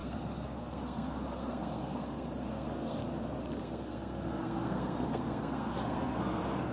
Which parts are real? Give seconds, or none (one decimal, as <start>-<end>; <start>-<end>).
3.0-3.6